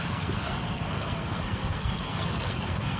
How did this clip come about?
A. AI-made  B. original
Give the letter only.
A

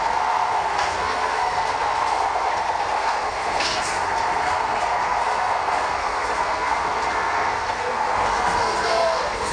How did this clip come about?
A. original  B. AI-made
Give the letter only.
B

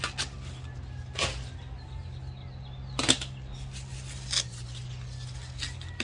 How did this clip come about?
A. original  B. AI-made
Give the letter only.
A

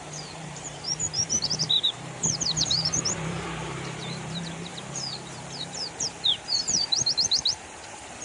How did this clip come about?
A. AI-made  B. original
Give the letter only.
A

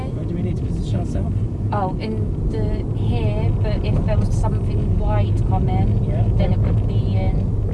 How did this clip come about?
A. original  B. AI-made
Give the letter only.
A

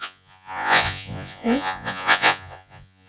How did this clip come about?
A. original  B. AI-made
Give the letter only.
B